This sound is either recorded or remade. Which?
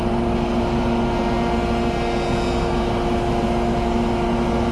recorded